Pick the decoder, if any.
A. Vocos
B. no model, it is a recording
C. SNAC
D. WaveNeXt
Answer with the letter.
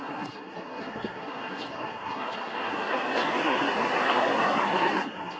C